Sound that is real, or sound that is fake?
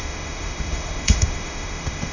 fake